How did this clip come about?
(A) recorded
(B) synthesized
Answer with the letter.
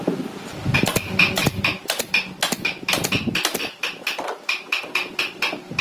A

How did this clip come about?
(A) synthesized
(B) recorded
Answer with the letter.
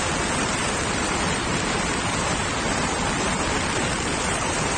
B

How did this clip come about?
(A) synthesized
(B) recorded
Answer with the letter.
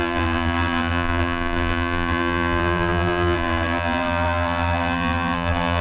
A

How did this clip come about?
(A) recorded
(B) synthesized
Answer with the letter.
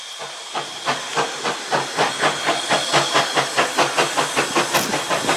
A